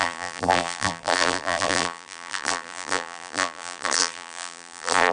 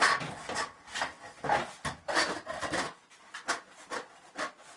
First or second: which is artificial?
first